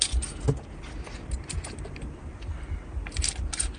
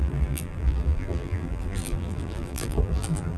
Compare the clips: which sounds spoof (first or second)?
second